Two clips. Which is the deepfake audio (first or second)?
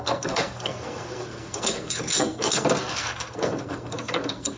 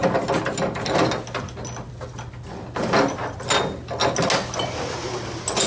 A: first